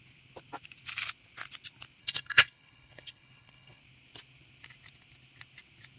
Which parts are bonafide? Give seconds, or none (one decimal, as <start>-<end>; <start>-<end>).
0.0-2.0; 3.8-6.0